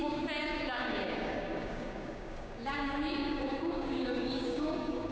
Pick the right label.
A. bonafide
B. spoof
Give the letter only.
B